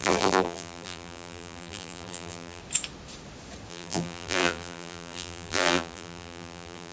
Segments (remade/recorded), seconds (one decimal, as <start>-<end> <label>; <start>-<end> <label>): 0.0-2.6 remade; 2.6-3.7 recorded; 3.7-6.9 remade